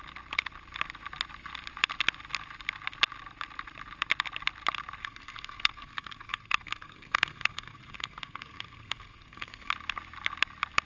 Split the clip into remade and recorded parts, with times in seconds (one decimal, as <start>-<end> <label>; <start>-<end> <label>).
0.0-5.0 recorded; 5.0-9.7 remade; 9.7-10.8 recorded